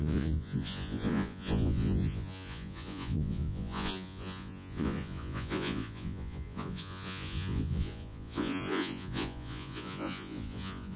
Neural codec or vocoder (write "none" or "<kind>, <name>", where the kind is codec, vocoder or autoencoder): vocoder, Vocos